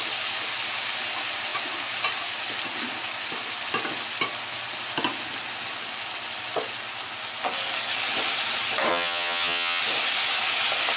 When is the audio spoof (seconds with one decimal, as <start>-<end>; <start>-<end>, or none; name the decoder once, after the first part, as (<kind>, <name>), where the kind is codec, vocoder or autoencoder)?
8.9-9.8 (vocoder, HiFi-GAN)